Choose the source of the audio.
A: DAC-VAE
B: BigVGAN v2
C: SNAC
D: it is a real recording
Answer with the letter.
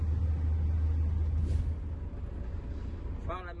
D